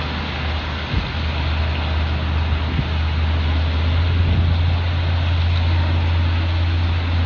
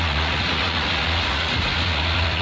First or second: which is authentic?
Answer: first